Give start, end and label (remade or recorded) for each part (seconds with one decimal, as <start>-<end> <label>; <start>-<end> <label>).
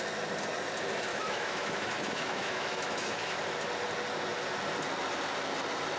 0.0-1.1 recorded; 1.1-3.4 remade; 3.4-6.0 recorded